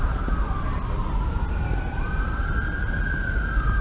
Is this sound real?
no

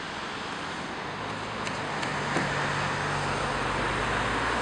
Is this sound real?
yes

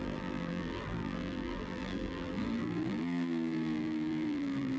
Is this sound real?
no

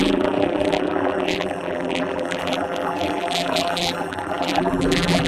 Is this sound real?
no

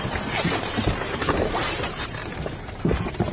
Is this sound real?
no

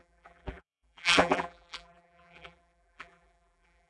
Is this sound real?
no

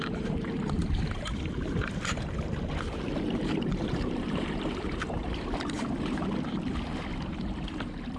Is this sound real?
no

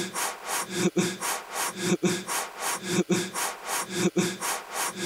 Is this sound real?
yes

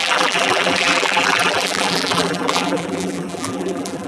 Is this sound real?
no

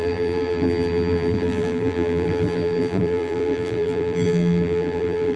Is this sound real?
no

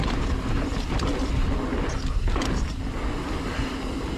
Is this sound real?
yes